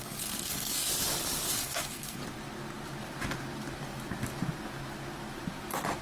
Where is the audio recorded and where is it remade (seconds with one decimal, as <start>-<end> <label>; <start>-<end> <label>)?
0.0-0.9 remade; 0.9-1.5 recorded; 1.5-2.2 remade; 2.2-6.0 recorded

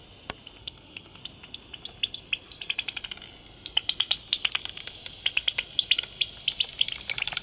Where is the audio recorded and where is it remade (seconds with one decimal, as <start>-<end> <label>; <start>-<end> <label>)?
0.0-0.6 recorded; 0.6-1.2 remade; 1.2-7.4 recorded